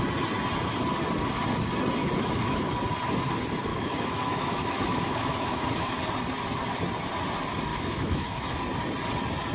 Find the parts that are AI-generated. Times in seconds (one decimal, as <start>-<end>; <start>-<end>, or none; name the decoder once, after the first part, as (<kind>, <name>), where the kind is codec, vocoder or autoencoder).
2.0-2.7 (autoencoder, DAC-VAE); 3.7-6.0; 7.7-8.6